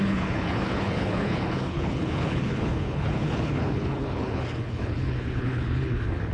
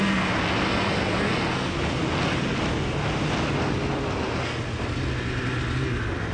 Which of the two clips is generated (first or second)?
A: first